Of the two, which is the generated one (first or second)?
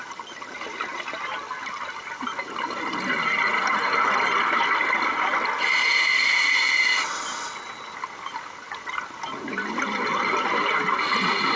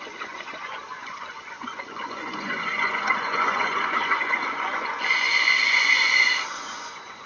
second